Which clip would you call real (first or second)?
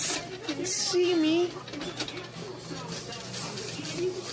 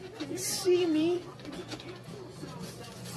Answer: first